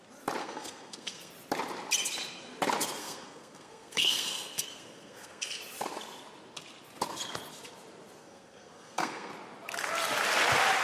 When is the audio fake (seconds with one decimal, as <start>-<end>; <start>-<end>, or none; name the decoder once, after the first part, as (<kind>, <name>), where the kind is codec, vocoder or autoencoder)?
0.4-1.3 (codec, SNAC); 3.0-5.6; 8.2-9.3